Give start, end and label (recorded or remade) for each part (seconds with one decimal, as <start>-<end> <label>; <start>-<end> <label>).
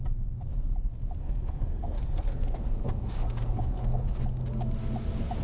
0.0-1.2 recorded; 1.2-4.2 remade; 4.2-5.4 recorded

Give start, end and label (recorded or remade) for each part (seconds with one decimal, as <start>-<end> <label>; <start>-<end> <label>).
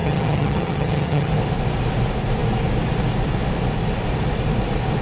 0.0-1.3 remade; 1.3-5.0 recorded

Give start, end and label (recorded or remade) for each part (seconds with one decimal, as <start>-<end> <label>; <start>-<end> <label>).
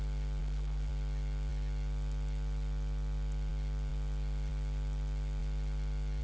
0.0-0.4 recorded; 0.4-0.9 remade; 0.9-6.2 recorded